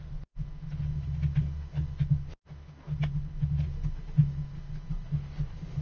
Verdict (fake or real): real